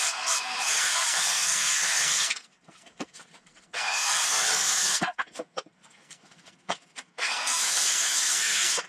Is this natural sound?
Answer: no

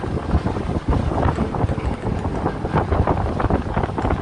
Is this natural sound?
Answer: yes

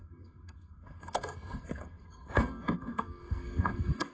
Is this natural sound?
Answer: no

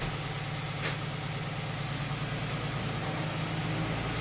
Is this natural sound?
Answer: yes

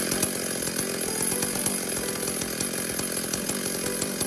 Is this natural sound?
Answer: yes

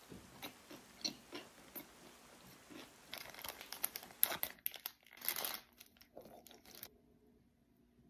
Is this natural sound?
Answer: yes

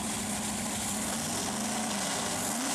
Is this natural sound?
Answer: yes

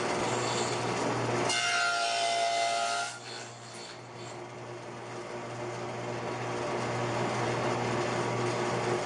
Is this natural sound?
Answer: yes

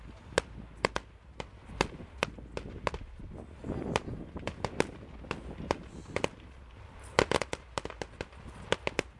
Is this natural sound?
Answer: yes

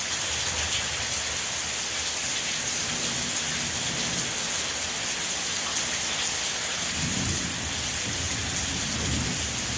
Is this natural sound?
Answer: yes